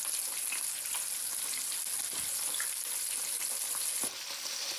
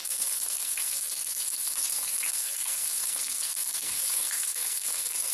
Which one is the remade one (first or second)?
second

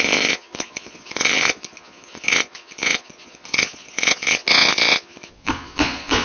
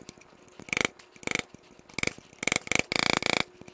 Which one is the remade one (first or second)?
first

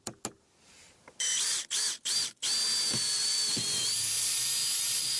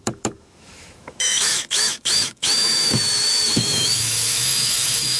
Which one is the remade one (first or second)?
second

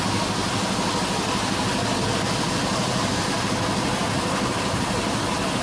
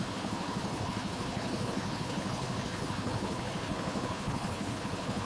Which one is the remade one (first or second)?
second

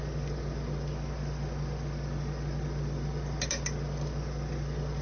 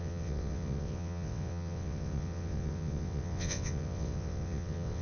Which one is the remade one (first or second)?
second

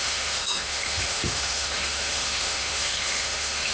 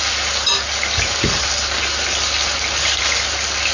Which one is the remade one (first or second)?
first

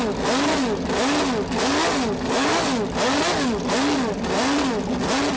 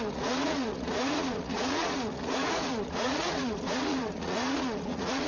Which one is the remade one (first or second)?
second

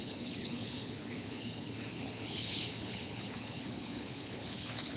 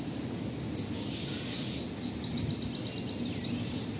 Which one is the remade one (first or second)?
first